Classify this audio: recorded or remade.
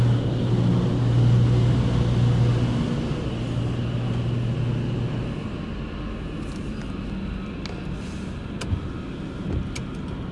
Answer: recorded